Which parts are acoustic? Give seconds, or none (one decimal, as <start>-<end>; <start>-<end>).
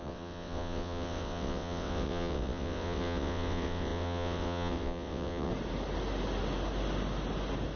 5.5-7.8